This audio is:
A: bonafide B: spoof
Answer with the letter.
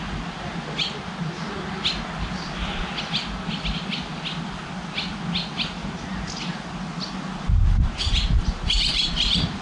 A